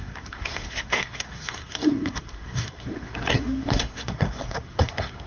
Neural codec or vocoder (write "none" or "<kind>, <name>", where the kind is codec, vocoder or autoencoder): codec, SNAC